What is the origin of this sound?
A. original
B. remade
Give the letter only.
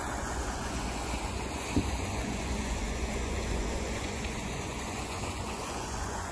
B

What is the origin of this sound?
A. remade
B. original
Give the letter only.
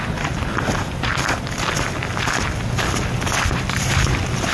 B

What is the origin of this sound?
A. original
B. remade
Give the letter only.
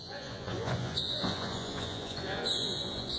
B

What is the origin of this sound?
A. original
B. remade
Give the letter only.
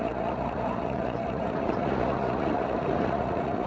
B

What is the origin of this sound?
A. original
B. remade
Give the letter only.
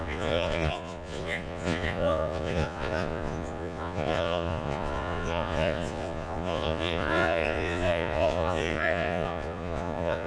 B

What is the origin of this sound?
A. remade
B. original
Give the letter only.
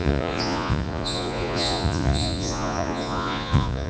A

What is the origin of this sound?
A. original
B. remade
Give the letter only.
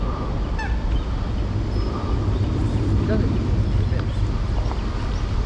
A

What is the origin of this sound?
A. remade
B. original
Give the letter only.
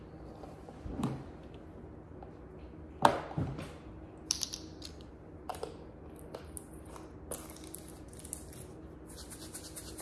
B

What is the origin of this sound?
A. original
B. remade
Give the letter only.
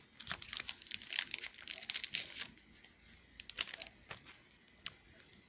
A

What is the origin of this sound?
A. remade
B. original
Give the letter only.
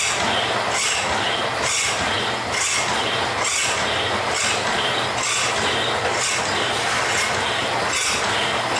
B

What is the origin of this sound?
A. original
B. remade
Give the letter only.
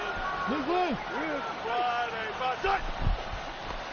A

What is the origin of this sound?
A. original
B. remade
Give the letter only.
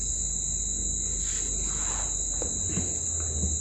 A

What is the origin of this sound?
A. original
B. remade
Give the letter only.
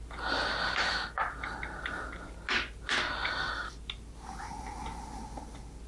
A